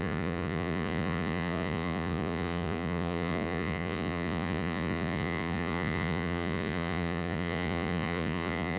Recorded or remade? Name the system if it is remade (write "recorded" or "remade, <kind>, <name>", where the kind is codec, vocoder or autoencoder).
remade, vocoder, Vocos